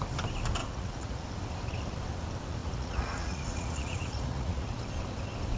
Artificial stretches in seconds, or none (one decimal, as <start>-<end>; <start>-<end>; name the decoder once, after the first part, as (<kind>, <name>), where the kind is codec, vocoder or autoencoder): 0.6-1.2 (vocoder, Vocos); 2.6-4.7